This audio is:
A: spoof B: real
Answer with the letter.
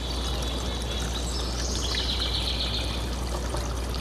B